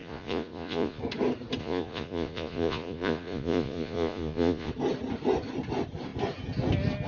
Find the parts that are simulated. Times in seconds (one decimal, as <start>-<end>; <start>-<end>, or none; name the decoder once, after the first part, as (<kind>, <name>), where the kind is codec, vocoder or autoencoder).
0.0-1.0 (vocoder, Vocos); 1.6-4.7